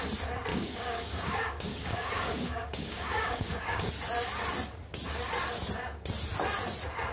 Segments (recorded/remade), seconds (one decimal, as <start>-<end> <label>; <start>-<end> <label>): 0.0-0.5 recorded; 0.5-3.9 remade; 3.9-7.1 recorded